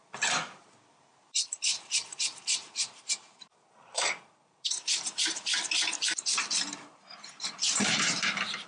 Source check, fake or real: fake